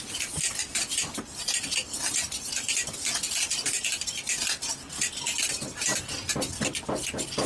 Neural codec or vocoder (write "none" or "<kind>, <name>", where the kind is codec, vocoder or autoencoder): none